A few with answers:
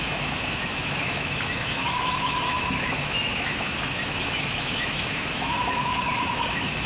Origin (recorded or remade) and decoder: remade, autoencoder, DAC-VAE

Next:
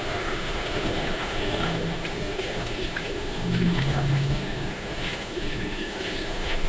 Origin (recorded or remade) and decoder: remade, autoencoder, DAC-VAE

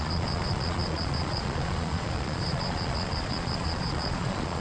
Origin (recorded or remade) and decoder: remade, vocoder, Vocos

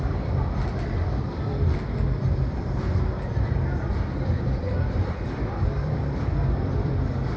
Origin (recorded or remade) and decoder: remade, vocoder, BigVGAN v2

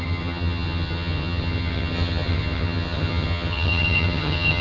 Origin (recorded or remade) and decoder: remade, vocoder, HiFi-GAN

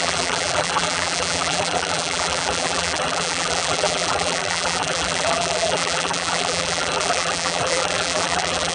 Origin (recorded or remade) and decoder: remade, vocoder, BigVGAN v2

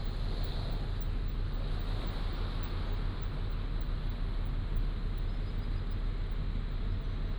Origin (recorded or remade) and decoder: recorded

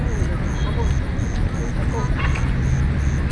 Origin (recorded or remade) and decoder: recorded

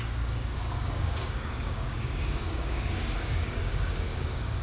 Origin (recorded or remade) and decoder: remade, codec, DAC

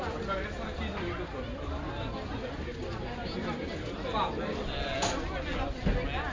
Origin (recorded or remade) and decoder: recorded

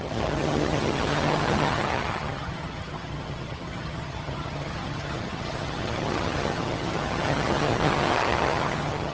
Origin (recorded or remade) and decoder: remade, vocoder, HiFi-GAN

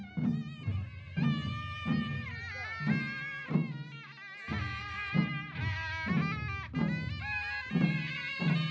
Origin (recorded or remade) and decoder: recorded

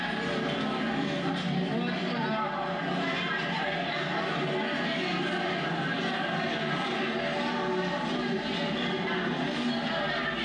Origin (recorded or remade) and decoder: recorded